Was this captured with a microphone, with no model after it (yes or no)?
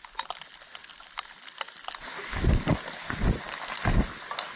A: yes